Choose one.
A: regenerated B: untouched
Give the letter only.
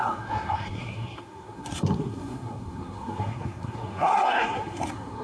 A